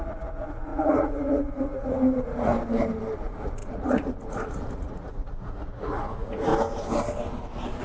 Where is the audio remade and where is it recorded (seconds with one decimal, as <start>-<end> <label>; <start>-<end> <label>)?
0.0-2.5 remade; 2.5-3.2 recorded; 3.2-6.5 remade; 6.5-7.8 recorded